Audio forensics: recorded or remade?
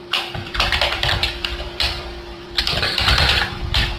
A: remade